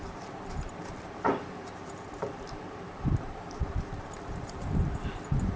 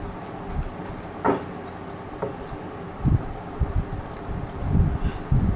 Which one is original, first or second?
second